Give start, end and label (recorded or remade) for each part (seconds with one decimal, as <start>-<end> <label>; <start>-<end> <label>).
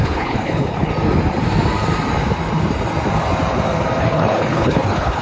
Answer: 0.0-0.9 remade; 0.9-4.0 recorded; 4.0-5.2 remade